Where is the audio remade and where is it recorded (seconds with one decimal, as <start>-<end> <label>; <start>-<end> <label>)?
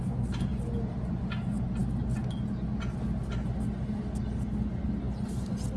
0.0-5.8 recorded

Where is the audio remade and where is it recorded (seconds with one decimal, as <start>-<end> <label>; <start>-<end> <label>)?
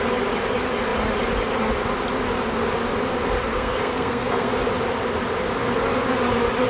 0.0-3.5 recorded; 3.5-4.5 remade; 4.5-6.7 recorded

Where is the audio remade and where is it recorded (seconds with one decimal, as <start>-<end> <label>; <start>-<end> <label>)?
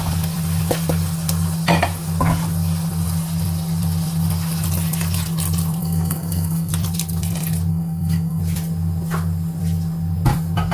0.0-5.8 recorded; 5.8-6.7 remade; 6.7-7.7 recorded; 7.7-8.4 remade; 8.4-10.7 recorded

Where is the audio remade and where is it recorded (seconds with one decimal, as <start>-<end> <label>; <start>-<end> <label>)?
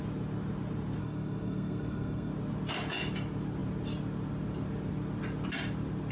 0.0-1.0 recorded; 1.0-2.3 remade; 2.3-6.1 recorded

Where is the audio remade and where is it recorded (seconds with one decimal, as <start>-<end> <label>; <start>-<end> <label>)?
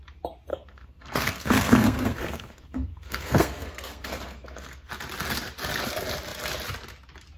0.0-0.5 recorded; 0.5-4.9 remade; 4.9-7.4 recorded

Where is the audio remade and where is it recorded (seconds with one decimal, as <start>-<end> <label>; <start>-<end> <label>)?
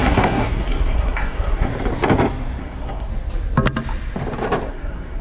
0.0-1.7 remade; 1.7-2.6 recorded; 2.6-3.1 remade; 3.1-4.7 recorded; 4.7-5.2 remade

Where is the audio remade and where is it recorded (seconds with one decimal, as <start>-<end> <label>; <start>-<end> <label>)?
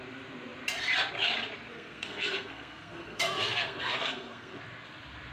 0.0-1.7 recorded; 1.7-4.6 remade; 4.6-5.3 recorded